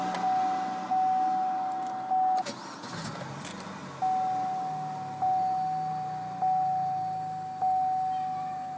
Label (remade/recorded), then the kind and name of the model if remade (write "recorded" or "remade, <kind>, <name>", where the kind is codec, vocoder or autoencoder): recorded